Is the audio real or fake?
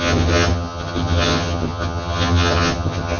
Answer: fake